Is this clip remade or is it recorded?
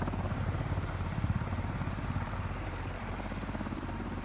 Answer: remade